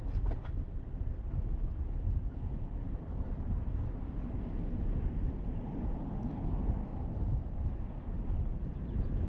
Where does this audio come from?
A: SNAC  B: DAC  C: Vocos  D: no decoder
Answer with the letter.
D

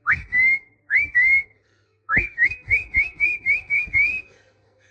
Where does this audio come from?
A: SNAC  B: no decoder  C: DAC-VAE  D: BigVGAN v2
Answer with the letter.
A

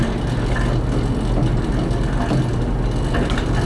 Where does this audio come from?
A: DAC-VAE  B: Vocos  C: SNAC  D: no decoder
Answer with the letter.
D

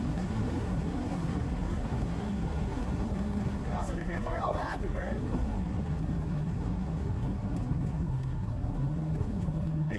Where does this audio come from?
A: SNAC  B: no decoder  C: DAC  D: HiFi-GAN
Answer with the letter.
A